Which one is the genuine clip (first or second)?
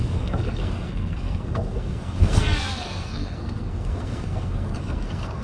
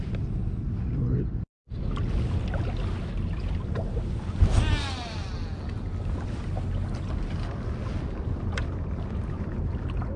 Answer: second